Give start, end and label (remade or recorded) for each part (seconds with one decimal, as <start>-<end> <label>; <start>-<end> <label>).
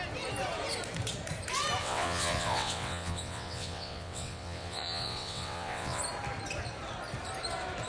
0.0-1.8 recorded; 1.8-6.0 remade; 6.0-7.9 recorded